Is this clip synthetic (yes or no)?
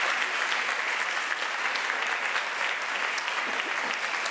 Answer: no